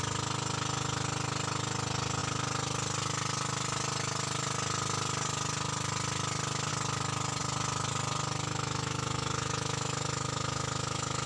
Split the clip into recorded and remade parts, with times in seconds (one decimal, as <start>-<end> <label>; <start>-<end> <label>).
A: 0.0-8.5 recorded; 8.5-11.3 remade